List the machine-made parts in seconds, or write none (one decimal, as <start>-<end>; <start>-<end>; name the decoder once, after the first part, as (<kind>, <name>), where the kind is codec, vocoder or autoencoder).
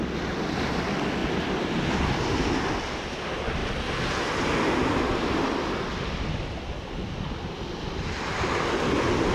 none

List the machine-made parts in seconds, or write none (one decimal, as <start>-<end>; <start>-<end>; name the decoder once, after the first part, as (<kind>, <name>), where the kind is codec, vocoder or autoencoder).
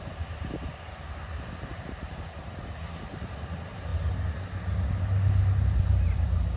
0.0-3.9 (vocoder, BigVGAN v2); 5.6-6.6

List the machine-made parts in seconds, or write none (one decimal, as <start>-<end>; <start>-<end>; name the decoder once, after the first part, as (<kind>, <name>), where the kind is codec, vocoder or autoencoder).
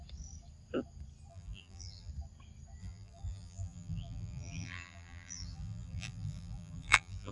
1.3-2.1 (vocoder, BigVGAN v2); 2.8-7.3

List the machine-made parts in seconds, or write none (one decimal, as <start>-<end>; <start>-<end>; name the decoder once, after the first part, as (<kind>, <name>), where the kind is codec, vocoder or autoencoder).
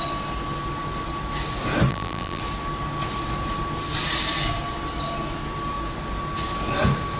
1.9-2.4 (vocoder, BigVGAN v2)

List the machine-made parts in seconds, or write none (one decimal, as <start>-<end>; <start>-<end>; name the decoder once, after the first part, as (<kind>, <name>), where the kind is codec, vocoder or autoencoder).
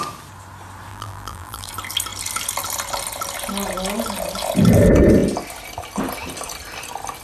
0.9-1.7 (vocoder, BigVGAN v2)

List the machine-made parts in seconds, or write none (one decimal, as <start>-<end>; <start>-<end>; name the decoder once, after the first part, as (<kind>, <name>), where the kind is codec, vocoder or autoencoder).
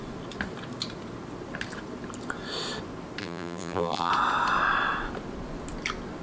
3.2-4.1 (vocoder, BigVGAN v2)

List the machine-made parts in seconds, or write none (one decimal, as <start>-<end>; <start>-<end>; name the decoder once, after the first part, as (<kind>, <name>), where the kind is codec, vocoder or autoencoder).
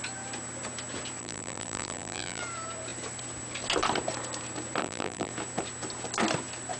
1.2-2.4 (vocoder, BigVGAN v2); 4.8-5.3